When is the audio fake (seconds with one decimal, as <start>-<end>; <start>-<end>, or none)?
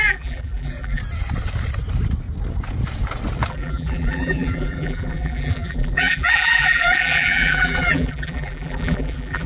0.0-1.0; 3.5-9.5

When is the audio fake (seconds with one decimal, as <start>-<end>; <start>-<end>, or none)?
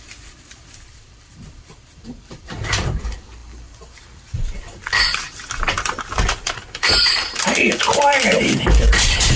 0.0-9.4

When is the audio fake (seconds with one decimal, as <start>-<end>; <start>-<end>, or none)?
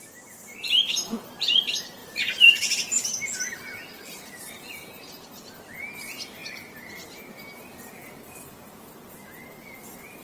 2.0-2.9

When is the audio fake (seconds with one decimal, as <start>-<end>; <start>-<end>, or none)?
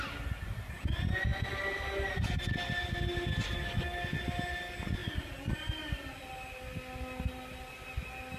none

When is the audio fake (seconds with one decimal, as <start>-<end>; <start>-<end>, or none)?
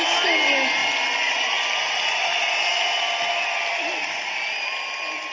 none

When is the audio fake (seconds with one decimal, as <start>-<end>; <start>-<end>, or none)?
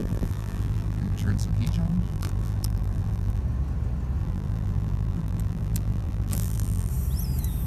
0.0-3.4; 4.2-6.9